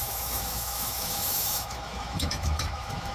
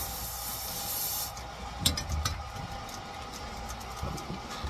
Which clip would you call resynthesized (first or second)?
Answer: first